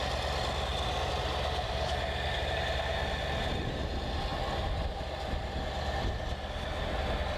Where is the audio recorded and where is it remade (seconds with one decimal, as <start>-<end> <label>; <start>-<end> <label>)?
0.0-0.7 recorded; 0.7-2.8 remade; 2.8-7.4 recorded